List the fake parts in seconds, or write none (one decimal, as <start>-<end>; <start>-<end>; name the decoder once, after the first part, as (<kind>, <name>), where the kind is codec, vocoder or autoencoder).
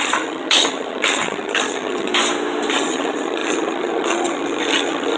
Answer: 0.0-2.1 (vocoder, HiFi-GAN); 2.7-5.2